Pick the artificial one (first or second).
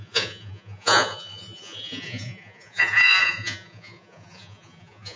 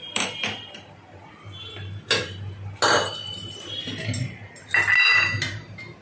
first